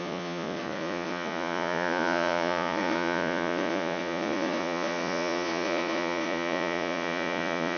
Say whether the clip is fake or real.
fake